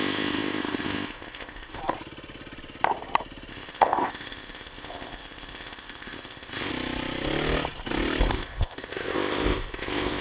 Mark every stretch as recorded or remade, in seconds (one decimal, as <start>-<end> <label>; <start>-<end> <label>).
0.0-1.8 remade; 1.8-3.5 recorded; 3.5-6.7 remade; 6.7-8.3 recorded; 8.3-10.2 remade